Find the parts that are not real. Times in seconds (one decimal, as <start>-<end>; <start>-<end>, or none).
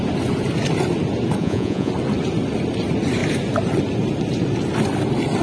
1.4-1.9